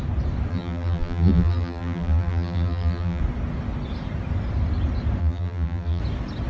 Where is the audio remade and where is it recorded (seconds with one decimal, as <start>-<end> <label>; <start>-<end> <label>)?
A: 0.0-0.5 recorded; 0.5-3.2 remade; 3.2-5.2 recorded; 5.2-6.0 remade; 6.0-6.5 recorded